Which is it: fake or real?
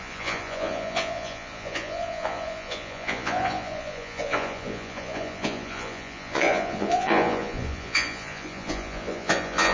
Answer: fake